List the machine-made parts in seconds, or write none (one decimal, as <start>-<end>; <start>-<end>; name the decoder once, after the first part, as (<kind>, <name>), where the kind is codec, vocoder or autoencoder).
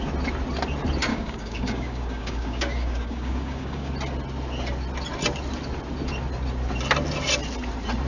1.1-3.9 (codec, DAC)